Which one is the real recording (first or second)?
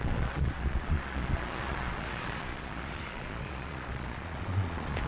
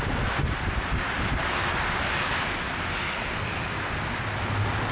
second